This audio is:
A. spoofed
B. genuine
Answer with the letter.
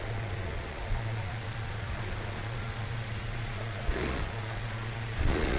A